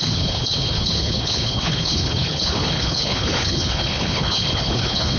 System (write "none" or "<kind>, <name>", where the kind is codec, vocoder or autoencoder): codec, HILCodec